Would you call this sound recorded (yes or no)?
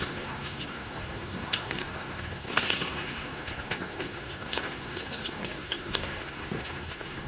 no